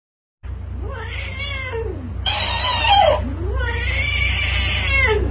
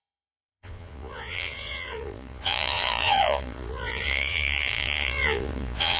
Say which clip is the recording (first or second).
first